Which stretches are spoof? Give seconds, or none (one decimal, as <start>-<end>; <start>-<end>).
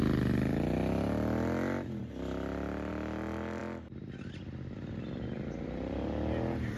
none